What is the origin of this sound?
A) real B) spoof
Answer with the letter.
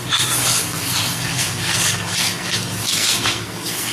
B